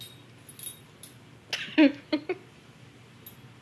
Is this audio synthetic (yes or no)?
no